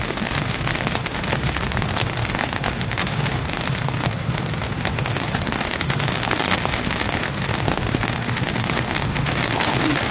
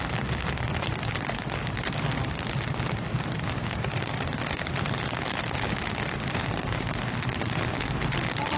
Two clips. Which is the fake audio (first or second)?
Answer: first